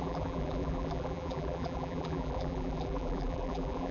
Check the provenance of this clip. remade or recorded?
remade